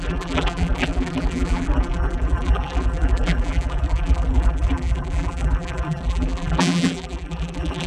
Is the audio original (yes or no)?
no